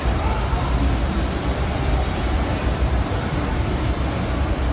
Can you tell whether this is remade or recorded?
remade